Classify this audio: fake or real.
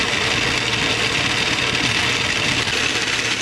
real